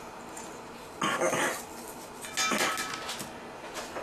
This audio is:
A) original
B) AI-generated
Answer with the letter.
A